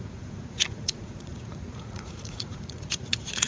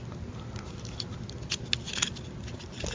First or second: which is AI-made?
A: first